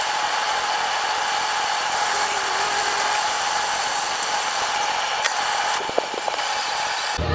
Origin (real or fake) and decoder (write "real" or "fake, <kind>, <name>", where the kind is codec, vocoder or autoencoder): real